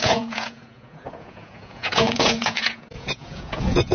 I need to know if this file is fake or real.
fake